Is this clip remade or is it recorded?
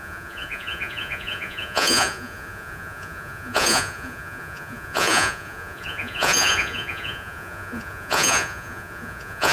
remade